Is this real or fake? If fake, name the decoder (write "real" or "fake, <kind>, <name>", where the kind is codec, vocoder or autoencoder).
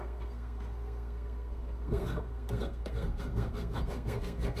fake, codec, SNAC